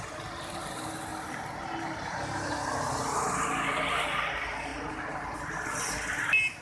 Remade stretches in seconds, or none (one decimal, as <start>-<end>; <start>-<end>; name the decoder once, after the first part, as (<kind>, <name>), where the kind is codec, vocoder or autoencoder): none